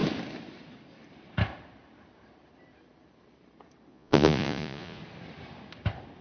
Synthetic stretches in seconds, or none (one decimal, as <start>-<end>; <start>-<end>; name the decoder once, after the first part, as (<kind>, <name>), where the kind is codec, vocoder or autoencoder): 3.9-5.0 (vocoder, Vocos)